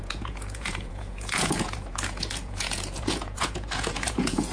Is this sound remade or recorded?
remade